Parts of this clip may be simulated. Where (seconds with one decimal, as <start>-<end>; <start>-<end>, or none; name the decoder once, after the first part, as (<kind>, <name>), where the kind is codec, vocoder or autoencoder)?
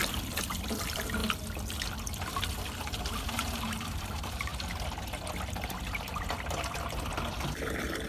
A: 0.0-1.2 (vocoder, BigVGAN v2); 2.3-4.5